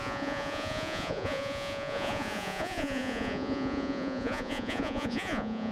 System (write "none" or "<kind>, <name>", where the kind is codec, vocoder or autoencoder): vocoder, Vocos